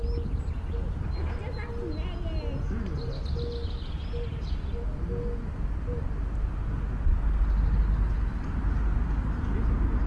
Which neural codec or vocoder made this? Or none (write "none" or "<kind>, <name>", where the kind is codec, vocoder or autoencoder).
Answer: none